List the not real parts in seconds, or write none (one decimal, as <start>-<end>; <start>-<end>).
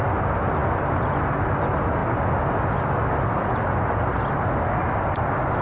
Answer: none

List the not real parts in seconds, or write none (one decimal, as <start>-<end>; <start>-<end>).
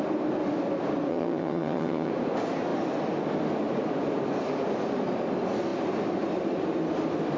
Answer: 1.1-2.1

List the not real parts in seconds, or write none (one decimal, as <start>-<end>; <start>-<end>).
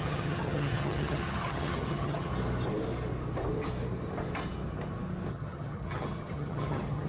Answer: 0.0-2.3; 5.3-7.1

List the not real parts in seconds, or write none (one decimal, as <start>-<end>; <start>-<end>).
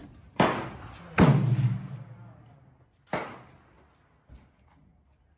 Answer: none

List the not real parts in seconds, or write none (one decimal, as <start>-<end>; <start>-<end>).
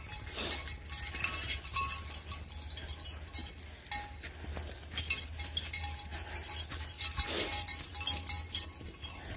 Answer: none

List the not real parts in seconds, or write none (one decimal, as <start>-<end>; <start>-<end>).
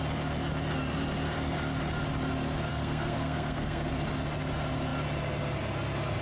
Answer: 2.7-3.9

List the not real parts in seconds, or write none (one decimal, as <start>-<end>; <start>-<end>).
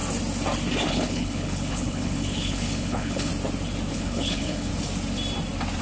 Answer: 0.9-3.3; 3.9-4.7